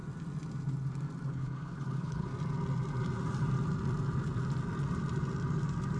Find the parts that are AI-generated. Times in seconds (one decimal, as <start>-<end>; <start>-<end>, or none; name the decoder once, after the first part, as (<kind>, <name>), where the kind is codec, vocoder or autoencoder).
1.3-2.3 (codec, HILCodec)